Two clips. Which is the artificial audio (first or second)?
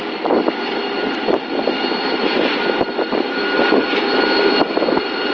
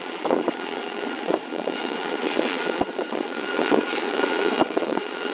second